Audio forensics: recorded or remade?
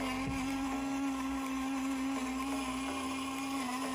recorded